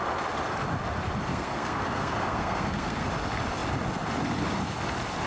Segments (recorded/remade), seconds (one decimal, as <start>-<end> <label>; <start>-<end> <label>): 0.0-1.3 recorded; 1.3-3.1 remade; 3.1-5.3 recorded